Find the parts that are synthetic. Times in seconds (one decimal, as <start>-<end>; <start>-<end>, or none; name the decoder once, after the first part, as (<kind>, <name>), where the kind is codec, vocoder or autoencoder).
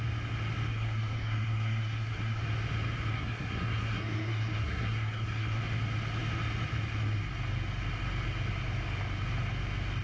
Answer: 0.7-2.4 (codec, SNAC); 3.1-5.6